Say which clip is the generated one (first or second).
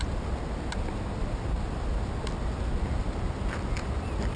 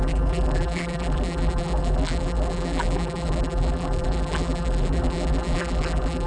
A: second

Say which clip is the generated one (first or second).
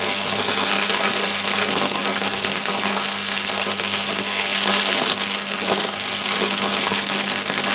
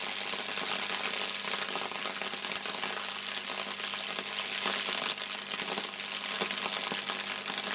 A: first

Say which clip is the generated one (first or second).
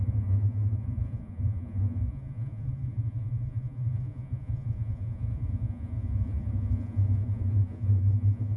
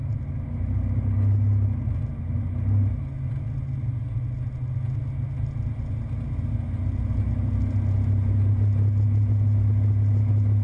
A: first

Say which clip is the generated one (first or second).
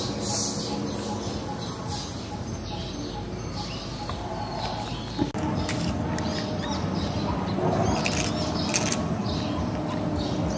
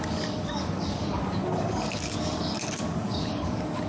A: second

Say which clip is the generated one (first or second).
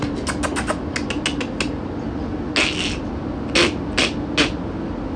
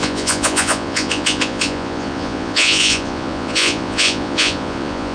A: second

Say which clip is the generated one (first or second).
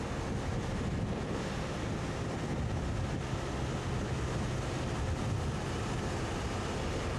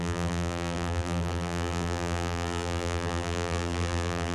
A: second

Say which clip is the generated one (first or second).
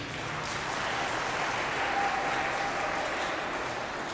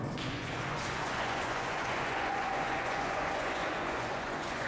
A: second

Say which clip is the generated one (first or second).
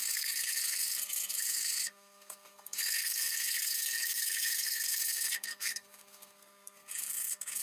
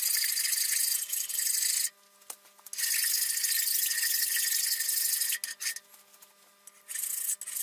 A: first